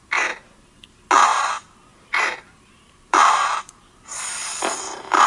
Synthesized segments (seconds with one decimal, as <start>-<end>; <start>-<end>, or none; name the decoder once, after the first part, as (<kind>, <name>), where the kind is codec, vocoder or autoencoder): 1.9-5.3 (vocoder, BigVGAN v2)